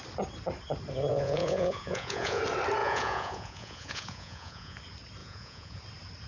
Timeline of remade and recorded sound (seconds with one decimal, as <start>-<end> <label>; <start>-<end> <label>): 0.0-1.1 recorded; 1.1-2.4 remade; 2.4-2.8 recorded; 2.8-4.8 remade; 4.8-5.2 recorded; 5.2-5.8 remade; 5.8-6.3 recorded